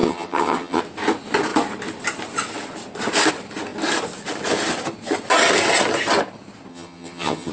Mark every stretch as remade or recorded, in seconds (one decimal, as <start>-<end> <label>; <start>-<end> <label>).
0.0-0.8 remade; 0.8-6.7 recorded; 6.7-7.5 remade